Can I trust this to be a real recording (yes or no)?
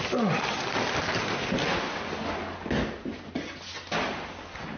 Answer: yes